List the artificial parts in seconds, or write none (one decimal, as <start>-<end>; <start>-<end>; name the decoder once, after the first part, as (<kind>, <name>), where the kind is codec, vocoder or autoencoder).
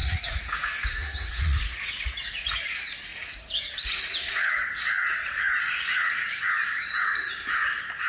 0.0-2.5 (vocoder, Vocos); 3.1-5.6